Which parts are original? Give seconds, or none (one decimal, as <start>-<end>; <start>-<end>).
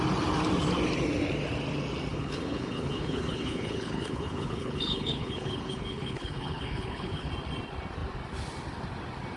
0.0-2.1; 7.3-9.4